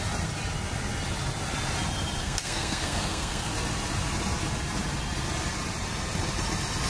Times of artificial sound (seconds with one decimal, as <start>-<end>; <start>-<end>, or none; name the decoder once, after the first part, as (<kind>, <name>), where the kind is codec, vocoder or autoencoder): 2.2-3.5 (codec, SNAC)